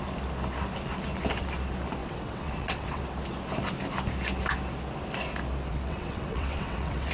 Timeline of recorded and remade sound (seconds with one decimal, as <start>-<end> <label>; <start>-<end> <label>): 0.0-2.0 recorded; 2.0-3.0 remade; 3.0-5.7 recorded; 5.7-7.1 remade